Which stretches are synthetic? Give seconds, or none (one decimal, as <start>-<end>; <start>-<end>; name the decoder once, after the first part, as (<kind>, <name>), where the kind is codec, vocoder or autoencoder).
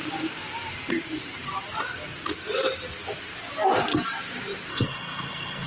4.7-5.7 (codec, SNAC)